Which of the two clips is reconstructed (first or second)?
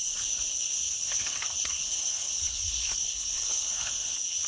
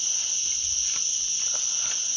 first